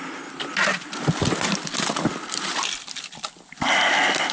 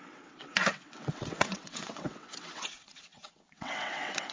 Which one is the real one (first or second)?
first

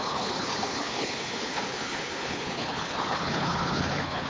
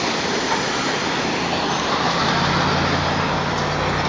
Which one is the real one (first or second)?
second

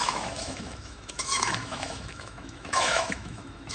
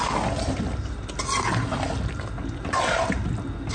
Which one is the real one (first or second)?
second